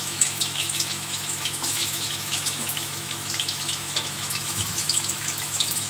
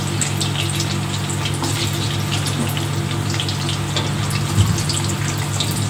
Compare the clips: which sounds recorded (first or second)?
second